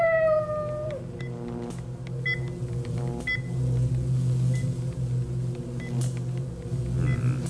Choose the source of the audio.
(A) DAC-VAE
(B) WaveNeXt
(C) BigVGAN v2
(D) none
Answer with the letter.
D